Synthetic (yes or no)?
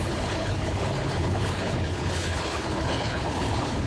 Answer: yes